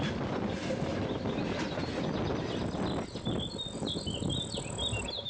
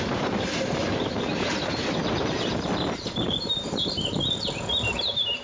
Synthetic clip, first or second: second